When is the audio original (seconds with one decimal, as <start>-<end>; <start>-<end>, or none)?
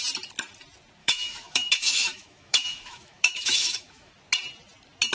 0.0-1.0; 4.1-5.1